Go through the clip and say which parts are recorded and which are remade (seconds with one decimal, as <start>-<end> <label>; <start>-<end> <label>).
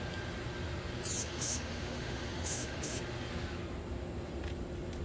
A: 0.0-1.2 recorded; 1.2-3.0 remade; 3.0-5.0 recorded